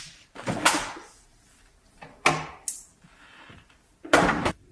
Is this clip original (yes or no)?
no